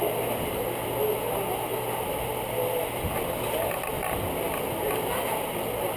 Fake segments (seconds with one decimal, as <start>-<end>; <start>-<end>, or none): none